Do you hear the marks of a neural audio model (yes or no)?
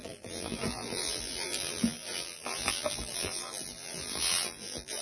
yes